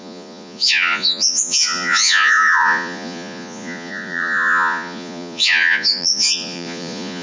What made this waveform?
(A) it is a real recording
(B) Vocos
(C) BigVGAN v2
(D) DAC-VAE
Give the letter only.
B